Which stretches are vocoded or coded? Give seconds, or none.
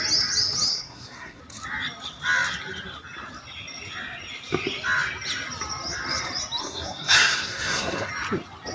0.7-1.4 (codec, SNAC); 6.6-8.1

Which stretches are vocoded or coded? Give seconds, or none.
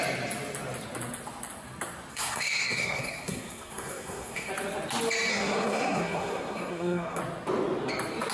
2.1-4.5 (codec, SNAC); 5.3-7.2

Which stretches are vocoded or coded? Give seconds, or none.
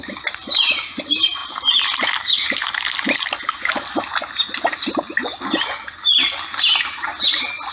none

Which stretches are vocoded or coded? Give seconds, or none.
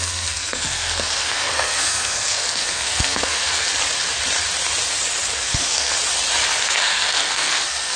0.0-3.7 (codec, SNAC); 5.4-5.9; 6.6-8.0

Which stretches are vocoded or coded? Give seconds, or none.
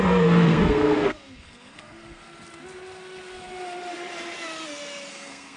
0.0-2.2 (codec, SNAC); 5.1-5.6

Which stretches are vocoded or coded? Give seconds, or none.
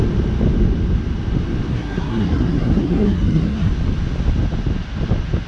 1.7-3.7 (codec, SNAC)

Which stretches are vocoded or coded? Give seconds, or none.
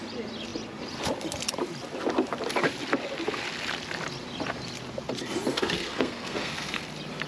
5.5-6.8 (codec, SNAC)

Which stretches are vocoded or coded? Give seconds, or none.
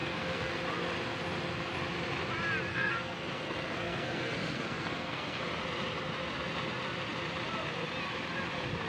0.0-0.5 (codec, SNAC); 2.7-5.4